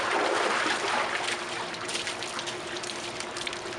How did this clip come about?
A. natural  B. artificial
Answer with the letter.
B